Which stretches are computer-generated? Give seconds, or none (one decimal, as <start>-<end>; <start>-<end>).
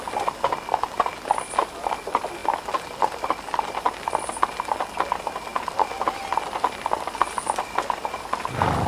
none